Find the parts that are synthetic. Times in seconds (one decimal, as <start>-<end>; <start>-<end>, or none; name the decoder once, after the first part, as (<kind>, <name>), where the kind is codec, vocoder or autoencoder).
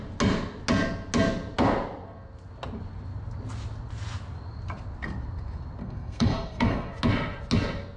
5.8-6.9 (codec, SNAC)